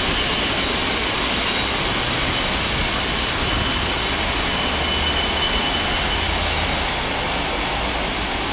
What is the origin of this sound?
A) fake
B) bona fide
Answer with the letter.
B